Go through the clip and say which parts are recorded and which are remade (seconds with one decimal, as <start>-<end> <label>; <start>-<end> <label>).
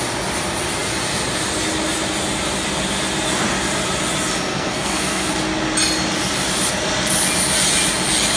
0.0-4.5 recorded; 4.5-5.3 remade; 5.3-8.4 recorded